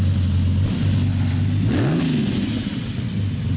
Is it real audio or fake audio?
real